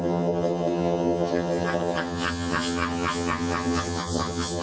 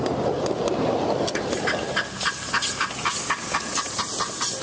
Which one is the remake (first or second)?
first